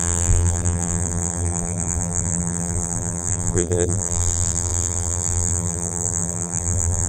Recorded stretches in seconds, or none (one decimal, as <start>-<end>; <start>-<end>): none